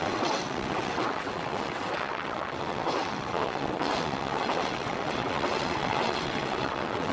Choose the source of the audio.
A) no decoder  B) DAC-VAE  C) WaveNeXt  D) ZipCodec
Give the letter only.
C